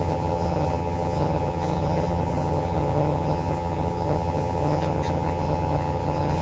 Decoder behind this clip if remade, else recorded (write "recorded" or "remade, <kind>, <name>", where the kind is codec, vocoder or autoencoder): remade, vocoder, HiFi-GAN